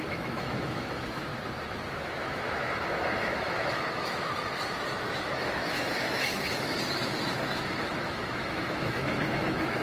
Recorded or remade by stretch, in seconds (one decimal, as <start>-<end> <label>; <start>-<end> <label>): 0.0-1.3 remade; 1.3-2.0 recorded; 2.0-9.8 remade